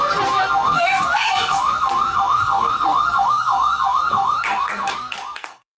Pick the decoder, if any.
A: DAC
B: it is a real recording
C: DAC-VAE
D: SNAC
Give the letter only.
D